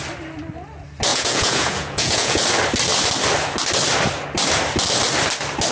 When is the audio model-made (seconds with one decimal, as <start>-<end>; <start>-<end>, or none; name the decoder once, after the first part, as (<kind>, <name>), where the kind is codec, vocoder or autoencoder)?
1.1-2.4 (vocoder, Vocos)